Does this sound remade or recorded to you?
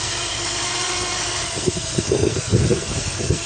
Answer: remade